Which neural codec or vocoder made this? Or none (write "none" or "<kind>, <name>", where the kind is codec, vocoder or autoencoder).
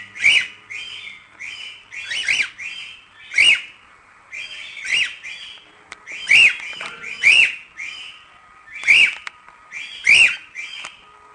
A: none